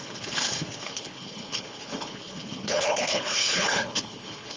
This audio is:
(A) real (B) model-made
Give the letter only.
B